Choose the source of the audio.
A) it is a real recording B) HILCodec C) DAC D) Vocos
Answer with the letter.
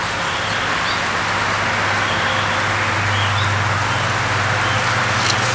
A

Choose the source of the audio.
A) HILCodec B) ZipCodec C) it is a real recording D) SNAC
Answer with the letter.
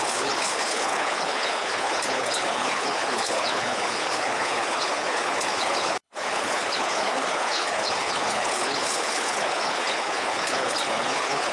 A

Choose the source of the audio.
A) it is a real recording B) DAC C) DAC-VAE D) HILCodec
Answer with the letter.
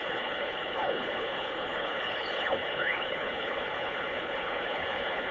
D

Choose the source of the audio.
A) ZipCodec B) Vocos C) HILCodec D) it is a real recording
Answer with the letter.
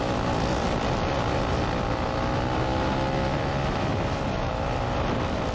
D